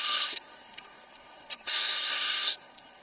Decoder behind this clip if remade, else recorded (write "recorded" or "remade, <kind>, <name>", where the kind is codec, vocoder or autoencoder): remade, codec, SNAC